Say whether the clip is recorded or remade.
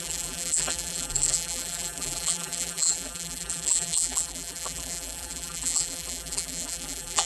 remade